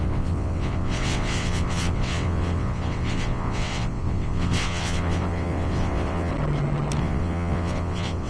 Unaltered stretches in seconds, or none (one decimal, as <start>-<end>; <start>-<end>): 6.3-7.0